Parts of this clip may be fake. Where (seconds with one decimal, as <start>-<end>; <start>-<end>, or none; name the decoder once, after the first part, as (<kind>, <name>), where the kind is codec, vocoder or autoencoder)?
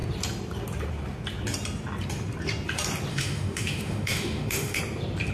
3.1-4.8 (autoencoder, DAC-VAE)